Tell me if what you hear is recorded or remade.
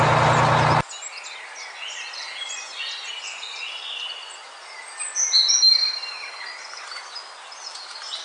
recorded